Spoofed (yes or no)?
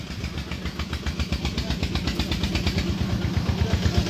no